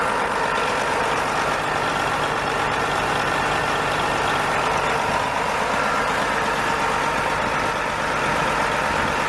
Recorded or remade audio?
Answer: recorded